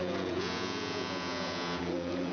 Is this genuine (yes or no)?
no